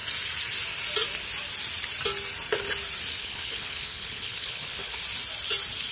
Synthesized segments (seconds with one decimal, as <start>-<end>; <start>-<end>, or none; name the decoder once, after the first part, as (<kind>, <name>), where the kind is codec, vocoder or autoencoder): 3.2-5.0 (codec, HILCodec)